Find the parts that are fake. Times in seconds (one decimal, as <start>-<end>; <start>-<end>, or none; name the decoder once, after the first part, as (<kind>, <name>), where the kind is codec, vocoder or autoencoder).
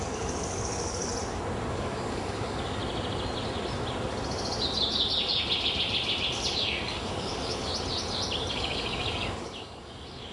0.0-1.1 (codec, DAC); 1.7-2.8; 6.5-7.7; 8.5-10.3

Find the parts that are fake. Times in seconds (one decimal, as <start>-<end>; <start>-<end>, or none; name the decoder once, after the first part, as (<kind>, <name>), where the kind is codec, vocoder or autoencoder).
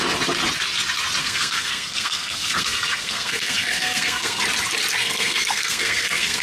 1.2-4.4 (codec, SNAC); 5.0-6.4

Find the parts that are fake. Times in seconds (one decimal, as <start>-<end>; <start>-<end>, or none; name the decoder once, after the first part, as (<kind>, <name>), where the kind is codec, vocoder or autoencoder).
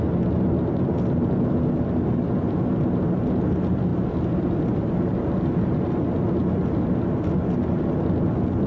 none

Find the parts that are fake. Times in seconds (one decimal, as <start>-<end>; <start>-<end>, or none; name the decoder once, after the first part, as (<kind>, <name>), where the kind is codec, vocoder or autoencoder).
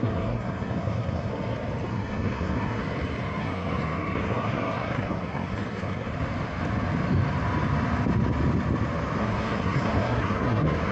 0.0-1.3 (codec, SNAC); 1.9-2.8; 3.4-6.1; 9.2-10.9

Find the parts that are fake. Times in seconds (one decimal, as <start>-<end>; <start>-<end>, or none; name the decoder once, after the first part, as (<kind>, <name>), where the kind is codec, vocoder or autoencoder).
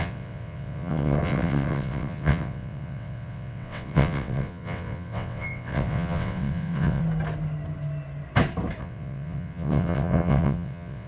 0.0-7.0 (vocoder, WaveNeXt); 8.8-11.1